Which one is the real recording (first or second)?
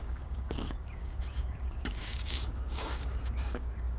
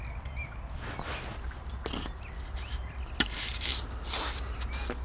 second